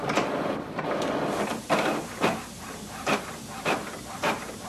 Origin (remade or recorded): recorded